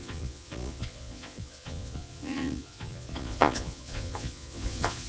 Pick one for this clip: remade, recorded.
remade